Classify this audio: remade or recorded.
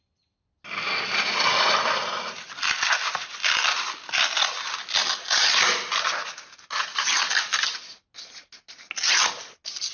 recorded